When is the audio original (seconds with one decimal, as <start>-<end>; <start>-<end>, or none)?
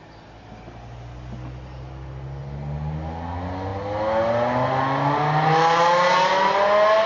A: 0.0-7.1